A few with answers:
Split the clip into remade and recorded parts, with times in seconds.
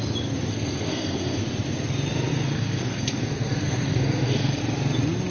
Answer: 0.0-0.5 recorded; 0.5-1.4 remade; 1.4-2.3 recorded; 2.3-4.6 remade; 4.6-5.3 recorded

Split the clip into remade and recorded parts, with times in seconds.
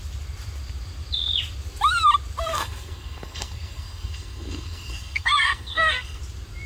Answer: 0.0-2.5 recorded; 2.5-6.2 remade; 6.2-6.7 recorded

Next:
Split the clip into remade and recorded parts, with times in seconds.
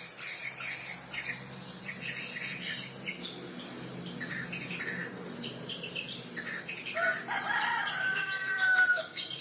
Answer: 0.0-8.0 recorded; 8.0-9.0 remade; 9.0-9.4 recorded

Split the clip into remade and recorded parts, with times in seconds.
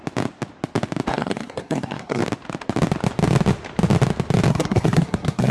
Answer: 0.0-1.1 recorded; 1.1-2.2 remade; 2.2-4.5 recorded; 4.5-5.5 remade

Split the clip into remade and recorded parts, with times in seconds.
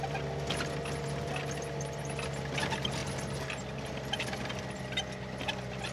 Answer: 0.0-5.9 recorded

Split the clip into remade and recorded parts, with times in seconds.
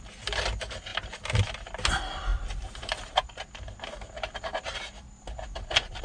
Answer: 0.0-6.0 recorded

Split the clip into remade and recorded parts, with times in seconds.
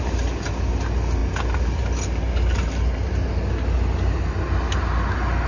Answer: 0.0-5.5 recorded